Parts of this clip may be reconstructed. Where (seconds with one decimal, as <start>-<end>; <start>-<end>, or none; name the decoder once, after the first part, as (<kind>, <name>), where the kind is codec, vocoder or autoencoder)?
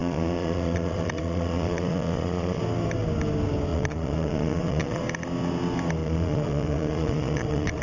0.0-2.6 (vocoder, Vocos); 3.7-5.0; 6.0-7.8